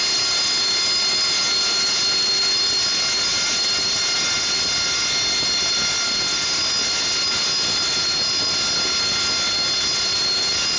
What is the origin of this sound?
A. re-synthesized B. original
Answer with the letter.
B